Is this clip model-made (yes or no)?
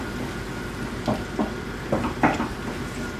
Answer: no